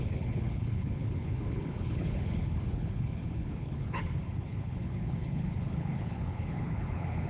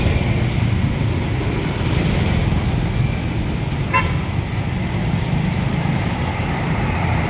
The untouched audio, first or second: second